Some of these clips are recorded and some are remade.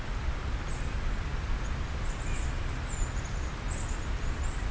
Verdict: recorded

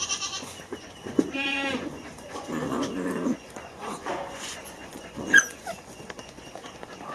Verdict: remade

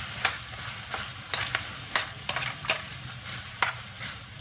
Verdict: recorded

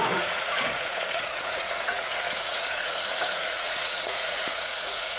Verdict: remade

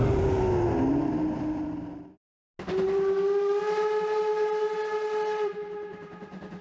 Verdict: recorded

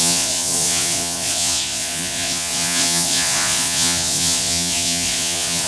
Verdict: remade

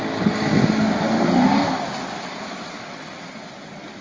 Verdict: recorded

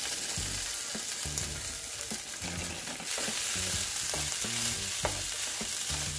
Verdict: recorded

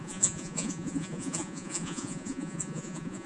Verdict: remade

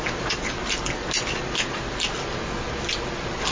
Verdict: recorded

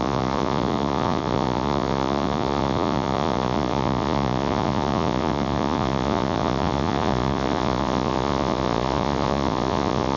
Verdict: remade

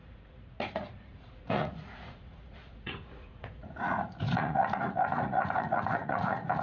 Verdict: remade